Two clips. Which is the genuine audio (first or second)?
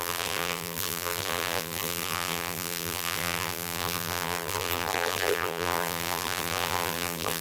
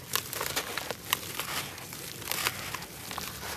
second